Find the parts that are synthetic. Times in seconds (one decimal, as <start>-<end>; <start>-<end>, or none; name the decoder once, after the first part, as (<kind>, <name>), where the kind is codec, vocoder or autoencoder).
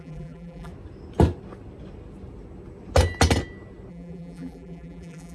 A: 0.0-0.7 (vocoder, BigVGAN v2); 3.9-5.3